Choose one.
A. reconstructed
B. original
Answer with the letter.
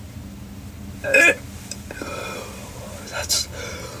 A